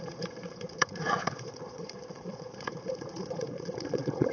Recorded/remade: remade